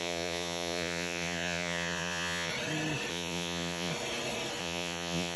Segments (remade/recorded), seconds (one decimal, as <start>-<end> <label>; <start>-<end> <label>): 0.0-2.5 remade; 2.5-3.1 recorded; 3.1-3.9 remade; 3.9-4.6 recorded; 4.6-5.4 remade